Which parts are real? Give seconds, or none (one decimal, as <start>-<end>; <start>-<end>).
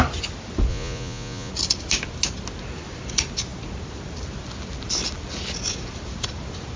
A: 0.0-0.7; 1.5-6.8